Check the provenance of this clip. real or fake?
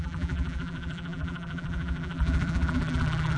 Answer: fake